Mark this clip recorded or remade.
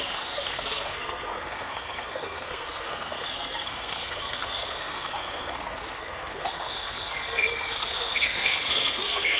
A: remade